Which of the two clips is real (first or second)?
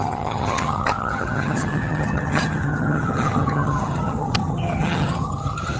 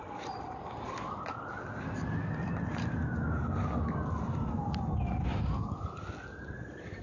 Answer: second